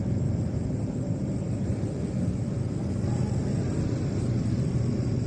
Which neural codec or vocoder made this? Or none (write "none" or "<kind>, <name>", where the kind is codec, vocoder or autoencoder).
none